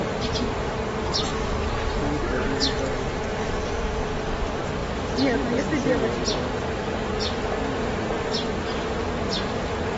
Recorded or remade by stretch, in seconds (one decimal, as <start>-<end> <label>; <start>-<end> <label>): 0.0-4.8 recorded; 4.8-6.4 remade; 6.4-10.0 recorded